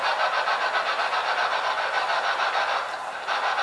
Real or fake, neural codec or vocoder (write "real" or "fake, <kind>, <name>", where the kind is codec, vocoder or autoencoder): fake, vocoder, BigVGAN v2